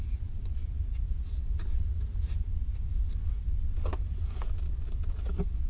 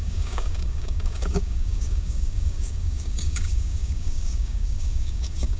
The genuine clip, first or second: first